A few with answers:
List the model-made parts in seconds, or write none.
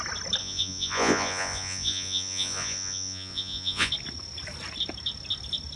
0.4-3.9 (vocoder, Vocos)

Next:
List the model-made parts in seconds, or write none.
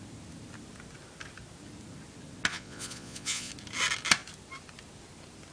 2.5-3.5 (vocoder, Vocos)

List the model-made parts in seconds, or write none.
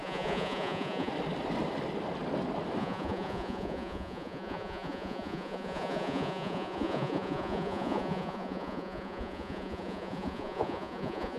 0.0-1.1 (vocoder, Vocos); 2.8-11.4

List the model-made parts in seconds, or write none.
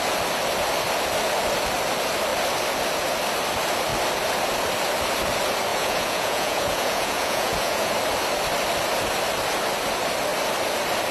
5.7-7.9 (vocoder, Vocos)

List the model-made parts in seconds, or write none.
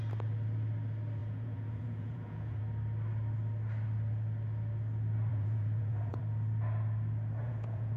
1.2-2.6 (vocoder, Vocos); 5.3-6.2; 7.4-8.0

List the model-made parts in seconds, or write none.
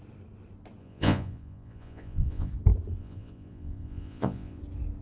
0.8-2.5 (vocoder, Vocos); 3.0-4.6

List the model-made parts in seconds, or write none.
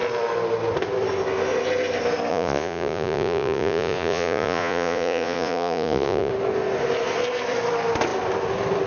2.3-6.3 (vocoder, Vocos)